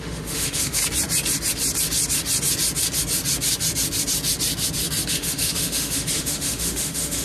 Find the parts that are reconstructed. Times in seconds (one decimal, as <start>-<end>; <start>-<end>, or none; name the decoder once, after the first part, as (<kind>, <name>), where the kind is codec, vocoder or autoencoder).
0.0-0.8 (autoencoder, DAC-VAE); 5.1-7.2